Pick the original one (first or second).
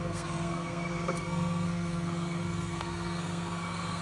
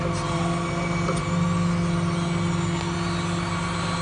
second